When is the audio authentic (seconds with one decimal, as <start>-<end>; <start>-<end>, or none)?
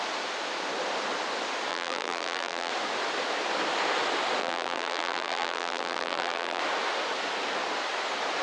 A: 0.0-1.7; 2.7-4.4; 6.6-8.4